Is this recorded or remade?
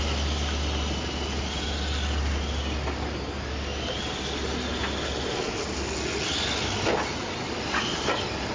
recorded